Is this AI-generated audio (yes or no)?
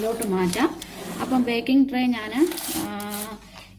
no